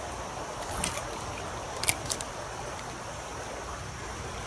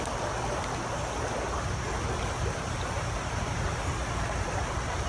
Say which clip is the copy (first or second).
first